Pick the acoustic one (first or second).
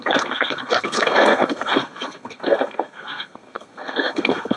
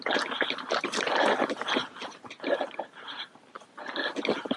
second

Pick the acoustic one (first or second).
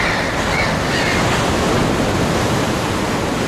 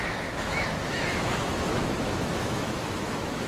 first